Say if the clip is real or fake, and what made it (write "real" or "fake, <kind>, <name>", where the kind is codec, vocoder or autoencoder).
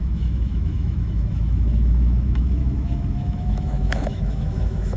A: fake, autoencoder, DAC-VAE